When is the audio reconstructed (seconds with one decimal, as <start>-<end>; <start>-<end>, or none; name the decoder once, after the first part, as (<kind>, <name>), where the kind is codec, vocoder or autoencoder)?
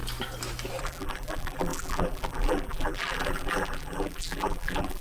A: 0.8-5.0 (vocoder, BigVGAN v2)